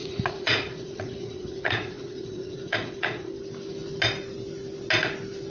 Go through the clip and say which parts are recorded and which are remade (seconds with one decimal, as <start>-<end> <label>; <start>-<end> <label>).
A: 0.0-3.3 remade; 3.3-5.5 recorded